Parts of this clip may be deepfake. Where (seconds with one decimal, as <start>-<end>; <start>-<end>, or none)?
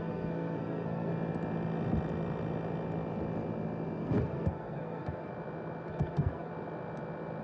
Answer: 0.0-1.1; 4.0-5.3; 5.9-6.5